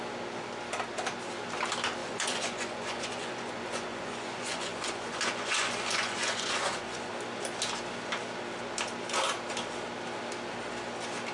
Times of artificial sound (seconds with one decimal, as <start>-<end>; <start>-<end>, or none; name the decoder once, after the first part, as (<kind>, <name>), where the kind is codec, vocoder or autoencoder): 2.0-7.1 (vocoder, Vocos)